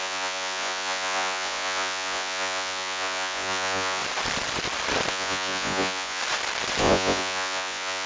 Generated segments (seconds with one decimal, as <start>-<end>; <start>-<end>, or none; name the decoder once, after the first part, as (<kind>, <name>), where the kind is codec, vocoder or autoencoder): 0.0-4.0 (vocoder, Vocos); 5.1-6.2; 6.8-8.1